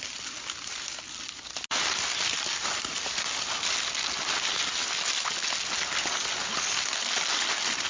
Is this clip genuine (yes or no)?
yes